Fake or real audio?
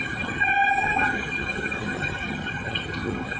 fake